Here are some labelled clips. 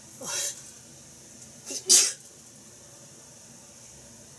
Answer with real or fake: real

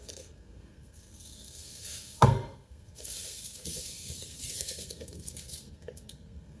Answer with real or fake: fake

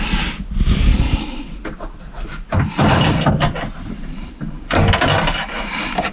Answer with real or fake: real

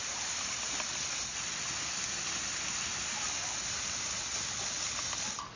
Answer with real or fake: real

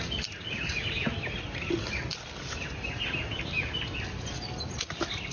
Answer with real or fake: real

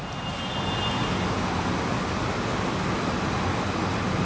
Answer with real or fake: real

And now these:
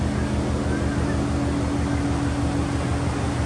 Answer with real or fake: real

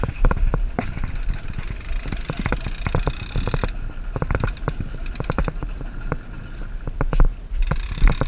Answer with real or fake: real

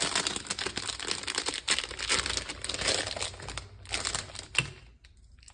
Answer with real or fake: real